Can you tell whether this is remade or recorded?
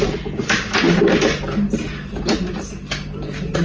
recorded